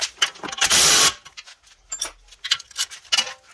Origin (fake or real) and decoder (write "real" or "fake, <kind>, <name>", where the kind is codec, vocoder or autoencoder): real